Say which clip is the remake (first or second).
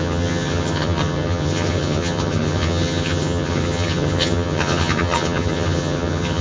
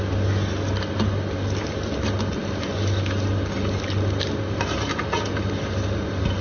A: first